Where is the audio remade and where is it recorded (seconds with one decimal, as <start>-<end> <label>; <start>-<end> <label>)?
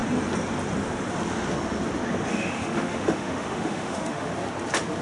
0.0-2.3 recorded; 2.3-4.3 remade; 4.3-5.0 recorded